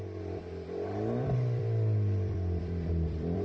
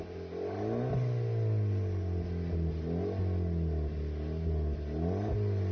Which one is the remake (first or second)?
first